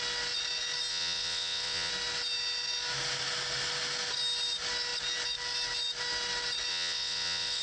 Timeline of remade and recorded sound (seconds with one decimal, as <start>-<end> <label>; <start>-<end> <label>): 0.0-0.9 recorded; 0.9-1.9 remade; 1.9-6.7 recorded; 6.7-7.6 remade